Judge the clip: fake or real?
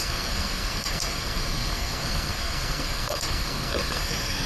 fake